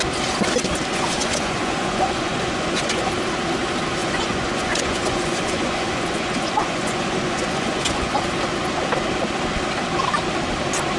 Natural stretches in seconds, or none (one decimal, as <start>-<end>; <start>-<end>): 0.0-0.9; 3.1-4.0; 8.2-11.0